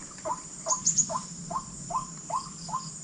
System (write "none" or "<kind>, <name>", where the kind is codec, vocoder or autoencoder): vocoder, BigVGAN v2